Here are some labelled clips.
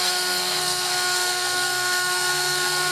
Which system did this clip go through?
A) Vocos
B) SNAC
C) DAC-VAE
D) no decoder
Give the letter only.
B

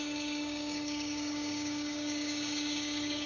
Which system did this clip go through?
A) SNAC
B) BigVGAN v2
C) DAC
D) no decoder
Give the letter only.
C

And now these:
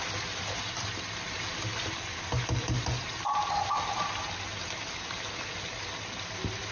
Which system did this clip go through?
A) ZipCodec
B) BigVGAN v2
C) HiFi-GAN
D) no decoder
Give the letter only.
D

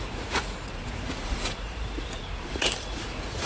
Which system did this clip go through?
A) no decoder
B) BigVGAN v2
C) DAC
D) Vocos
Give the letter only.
D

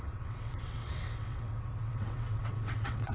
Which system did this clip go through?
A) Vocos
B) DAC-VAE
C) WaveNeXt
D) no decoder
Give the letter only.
C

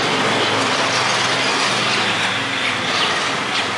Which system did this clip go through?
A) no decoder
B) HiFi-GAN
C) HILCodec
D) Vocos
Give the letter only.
A